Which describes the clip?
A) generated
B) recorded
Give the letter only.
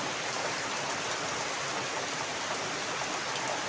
B